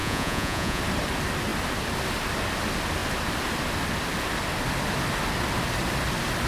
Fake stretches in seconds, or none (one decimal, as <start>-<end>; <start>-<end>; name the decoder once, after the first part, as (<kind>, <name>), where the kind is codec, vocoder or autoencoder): 0.0-0.8 (vocoder, Vocos)